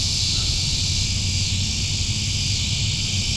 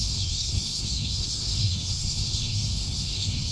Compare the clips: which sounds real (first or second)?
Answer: first